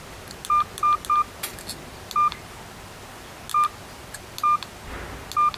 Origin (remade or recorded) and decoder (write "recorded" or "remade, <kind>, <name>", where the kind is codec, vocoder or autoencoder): recorded